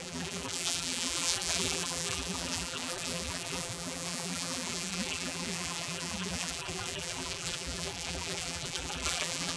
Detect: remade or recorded remade